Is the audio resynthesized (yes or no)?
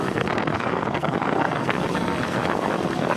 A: yes